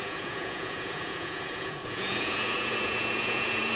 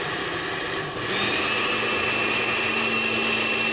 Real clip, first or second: second